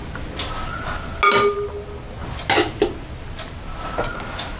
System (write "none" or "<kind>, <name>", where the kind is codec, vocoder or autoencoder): none